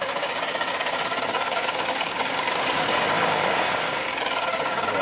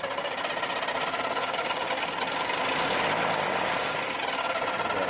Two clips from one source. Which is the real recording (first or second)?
second